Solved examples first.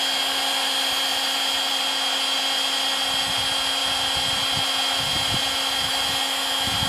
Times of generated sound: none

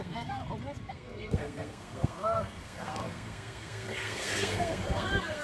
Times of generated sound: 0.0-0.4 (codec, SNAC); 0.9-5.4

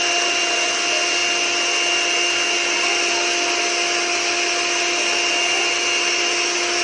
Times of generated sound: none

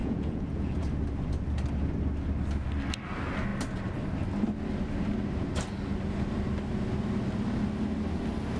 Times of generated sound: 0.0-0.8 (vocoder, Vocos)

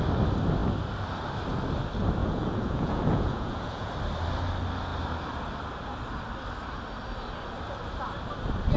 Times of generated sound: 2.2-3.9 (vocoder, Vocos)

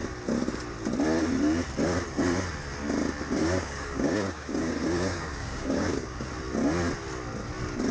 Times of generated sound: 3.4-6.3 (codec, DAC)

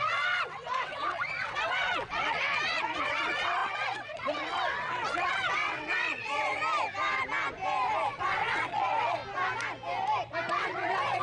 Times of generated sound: 0.0-6.6 (vocoder, WaveNeXt); 8.1-9.2; 10.5-11.2

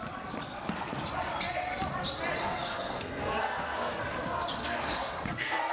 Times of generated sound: 0.5-1.0 (codec, SNAC); 2.4-4.0; 4.6-5.7